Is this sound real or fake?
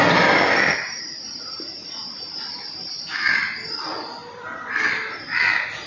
real